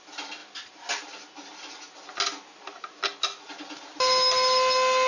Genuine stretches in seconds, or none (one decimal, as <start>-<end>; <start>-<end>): 0.0-5.1